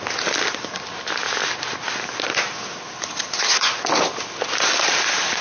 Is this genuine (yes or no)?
yes